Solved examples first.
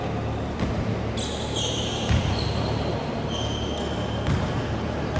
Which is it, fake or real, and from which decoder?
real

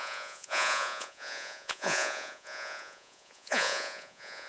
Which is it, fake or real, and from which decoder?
fake, vocoder, Vocos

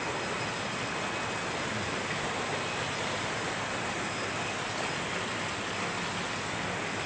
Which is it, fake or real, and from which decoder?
real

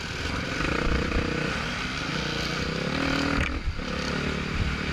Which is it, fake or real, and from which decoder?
real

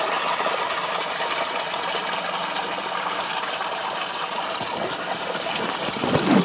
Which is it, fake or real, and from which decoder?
real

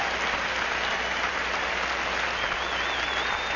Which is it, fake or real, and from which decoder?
real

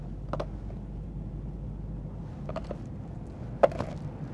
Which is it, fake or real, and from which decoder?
real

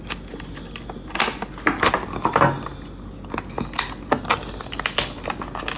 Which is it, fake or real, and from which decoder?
real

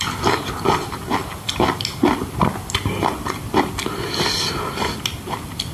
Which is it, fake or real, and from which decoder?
real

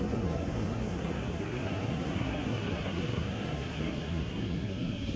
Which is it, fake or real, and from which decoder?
fake, codec, SNAC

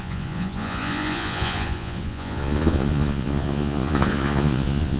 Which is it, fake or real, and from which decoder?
fake, vocoder, Vocos